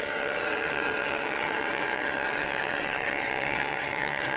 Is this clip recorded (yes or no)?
no